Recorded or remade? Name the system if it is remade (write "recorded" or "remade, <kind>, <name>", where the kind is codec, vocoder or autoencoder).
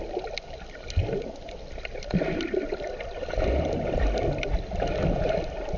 recorded